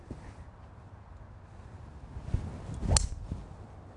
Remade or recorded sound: recorded